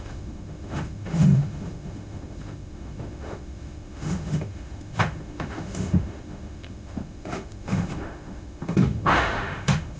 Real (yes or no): no